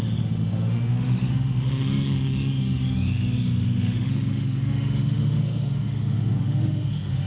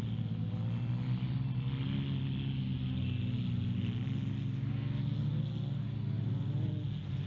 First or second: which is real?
second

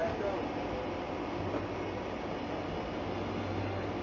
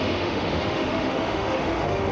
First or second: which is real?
first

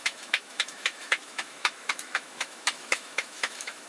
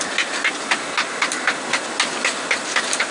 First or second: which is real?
second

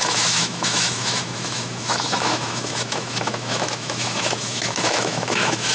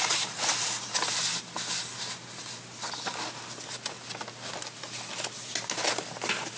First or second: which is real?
second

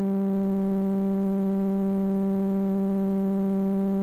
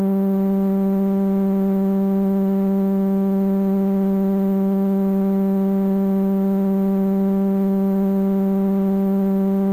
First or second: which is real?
first